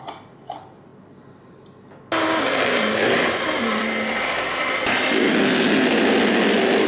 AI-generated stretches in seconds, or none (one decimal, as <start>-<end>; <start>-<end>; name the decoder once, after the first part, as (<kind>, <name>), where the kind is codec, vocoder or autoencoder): none